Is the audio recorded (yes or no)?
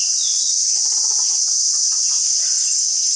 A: yes